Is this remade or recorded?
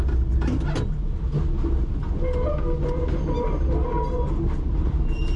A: recorded